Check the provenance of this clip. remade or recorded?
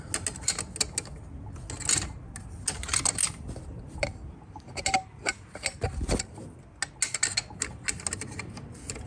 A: recorded